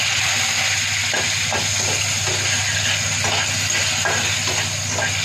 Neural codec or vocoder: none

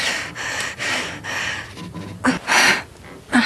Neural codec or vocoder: none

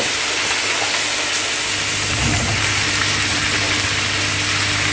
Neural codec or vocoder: none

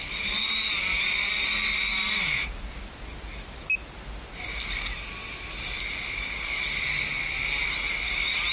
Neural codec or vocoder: none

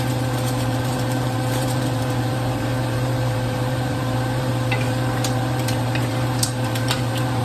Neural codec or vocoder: vocoder, BigVGAN v2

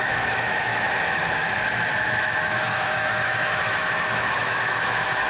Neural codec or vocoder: autoencoder, DAC-VAE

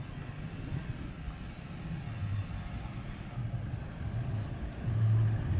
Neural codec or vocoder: none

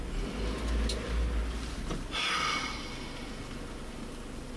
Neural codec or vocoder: none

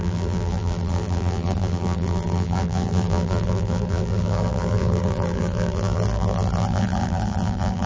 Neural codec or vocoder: vocoder, BigVGAN v2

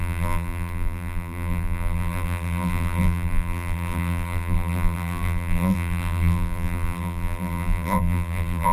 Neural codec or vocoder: vocoder, BigVGAN v2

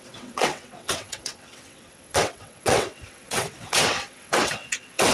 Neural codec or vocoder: vocoder, WaveNeXt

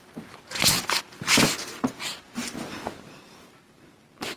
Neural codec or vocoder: none